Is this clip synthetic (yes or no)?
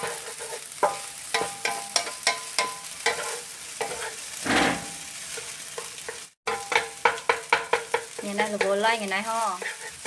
no